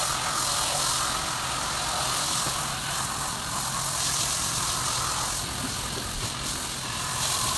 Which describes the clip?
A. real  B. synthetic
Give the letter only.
B